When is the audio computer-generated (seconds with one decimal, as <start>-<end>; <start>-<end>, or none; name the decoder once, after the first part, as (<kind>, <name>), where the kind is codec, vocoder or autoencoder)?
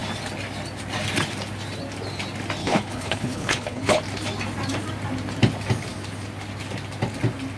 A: 2.6-4.0 (codec, HILCodec)